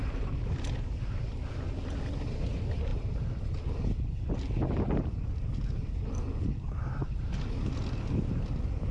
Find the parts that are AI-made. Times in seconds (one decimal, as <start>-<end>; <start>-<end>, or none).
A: none